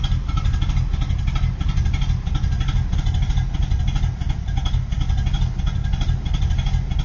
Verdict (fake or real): real